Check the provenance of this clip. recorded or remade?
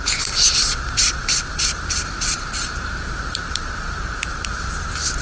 remade